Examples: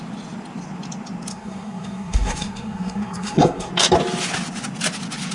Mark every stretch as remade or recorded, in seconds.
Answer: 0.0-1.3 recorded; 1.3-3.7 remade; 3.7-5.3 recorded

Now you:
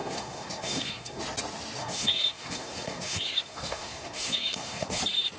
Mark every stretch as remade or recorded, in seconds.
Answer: 0.0-1.2 remade; 1.2-1.8 recorded; 1.8-5.0 remade; 5.0-5.4 recorded

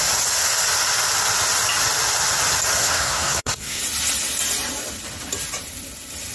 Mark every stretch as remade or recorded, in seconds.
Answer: 0.0-2.8 recorded; 2.8-3.8 remade; 3.8-6.3 recorded

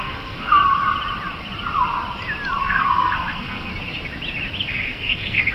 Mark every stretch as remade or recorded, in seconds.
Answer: 0.0-0.6 remade; 0.6-2.6 recorded; 2.6-3.7 remade; 3.7-4.7 recorded; 4.7-5.5 remade

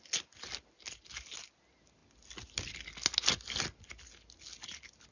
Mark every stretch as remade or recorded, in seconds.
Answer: 0.0-5.1 recorded

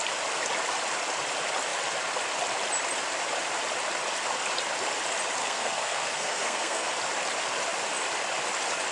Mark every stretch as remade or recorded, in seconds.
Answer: 0.0-5.4 recorded; 5.4-6.9 remade; 6.9-8.9 recorded